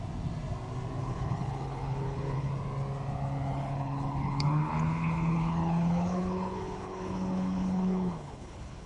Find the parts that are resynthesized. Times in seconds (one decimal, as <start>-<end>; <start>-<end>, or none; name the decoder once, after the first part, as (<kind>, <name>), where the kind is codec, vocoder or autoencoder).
1.0-2.5 (codec, HILCodec); 3.5-8.9